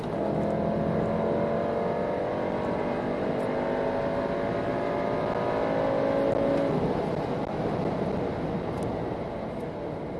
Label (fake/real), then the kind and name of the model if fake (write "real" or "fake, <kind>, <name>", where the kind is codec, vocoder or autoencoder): real